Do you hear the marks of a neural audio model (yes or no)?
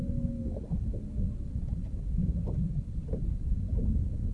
no